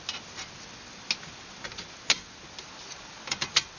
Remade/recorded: recorded